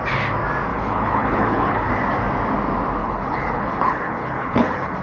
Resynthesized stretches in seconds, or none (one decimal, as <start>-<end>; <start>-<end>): 0.7-1.9; 3.0-5.0

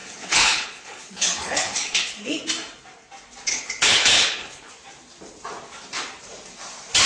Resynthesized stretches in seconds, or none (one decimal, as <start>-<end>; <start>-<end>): 0.0-2.4; 3.5-4.7

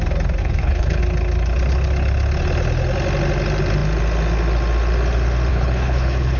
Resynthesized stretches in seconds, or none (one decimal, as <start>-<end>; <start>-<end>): 0.4-1.0; 5.5-6.4

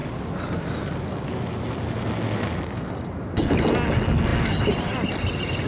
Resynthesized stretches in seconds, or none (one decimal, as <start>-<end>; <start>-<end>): none

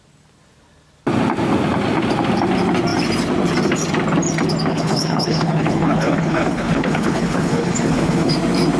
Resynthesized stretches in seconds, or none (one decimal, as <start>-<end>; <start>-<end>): 4.7-8.3